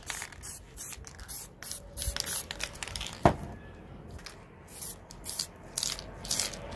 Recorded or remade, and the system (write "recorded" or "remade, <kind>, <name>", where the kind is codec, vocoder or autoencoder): recorded